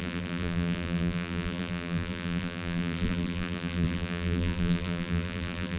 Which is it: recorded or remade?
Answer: remade